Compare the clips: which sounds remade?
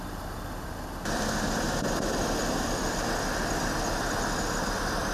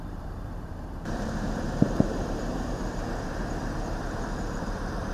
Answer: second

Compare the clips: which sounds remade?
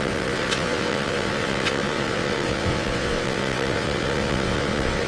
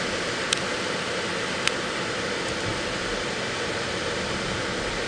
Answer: first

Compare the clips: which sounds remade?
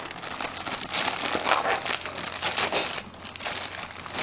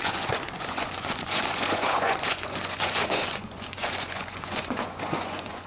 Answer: second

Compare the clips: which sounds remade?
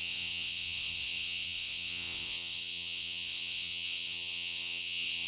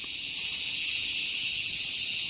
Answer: first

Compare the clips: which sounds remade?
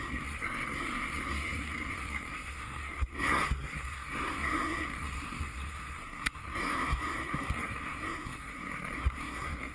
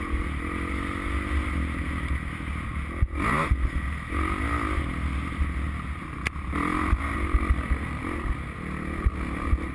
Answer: first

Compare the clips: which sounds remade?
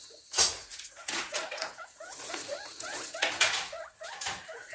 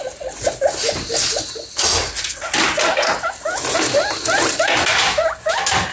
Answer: first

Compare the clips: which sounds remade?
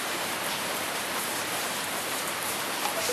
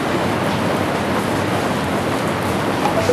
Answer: first